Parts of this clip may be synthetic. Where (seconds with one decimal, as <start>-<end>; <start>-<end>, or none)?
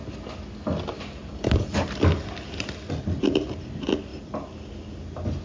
none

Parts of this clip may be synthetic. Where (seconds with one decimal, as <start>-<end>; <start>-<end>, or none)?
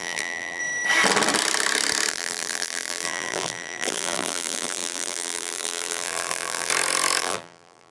0.0-0.6; 2.1-6.7; 7.2-7.9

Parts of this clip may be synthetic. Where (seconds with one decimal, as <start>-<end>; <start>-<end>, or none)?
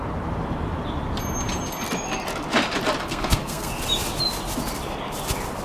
3.0-3.7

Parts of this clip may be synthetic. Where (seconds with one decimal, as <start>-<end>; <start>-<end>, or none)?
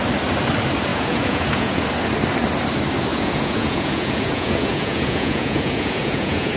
0.9-1.8; 3.1-6.6